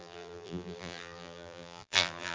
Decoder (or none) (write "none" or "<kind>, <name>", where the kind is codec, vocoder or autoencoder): vocoder, BigVGAN v2